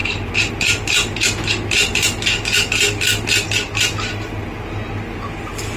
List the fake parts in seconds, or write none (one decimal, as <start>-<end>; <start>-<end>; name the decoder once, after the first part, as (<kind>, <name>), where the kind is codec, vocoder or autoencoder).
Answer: none